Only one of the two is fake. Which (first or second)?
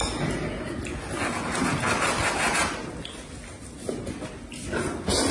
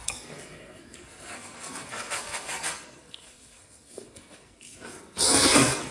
second